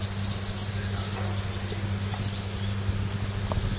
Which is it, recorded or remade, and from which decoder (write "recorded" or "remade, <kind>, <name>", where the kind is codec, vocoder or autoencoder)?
recorded